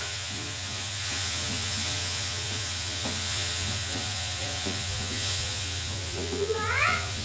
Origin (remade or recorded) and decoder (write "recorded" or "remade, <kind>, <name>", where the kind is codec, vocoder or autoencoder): remade, vocoder, Vocos